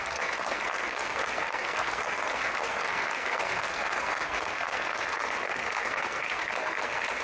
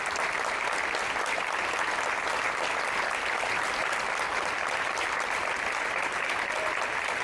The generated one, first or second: first